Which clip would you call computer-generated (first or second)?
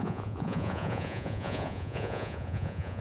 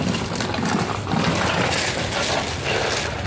first